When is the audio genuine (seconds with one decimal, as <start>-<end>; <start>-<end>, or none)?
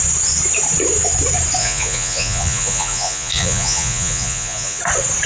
0.0-1.6; 4.8-5.3